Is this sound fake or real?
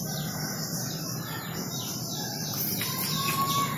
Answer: real